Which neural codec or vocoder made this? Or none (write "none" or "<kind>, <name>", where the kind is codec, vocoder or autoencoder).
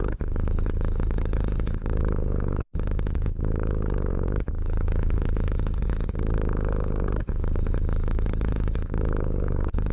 codec, DAC